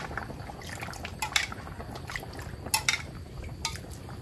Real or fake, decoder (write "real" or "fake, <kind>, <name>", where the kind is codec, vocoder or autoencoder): real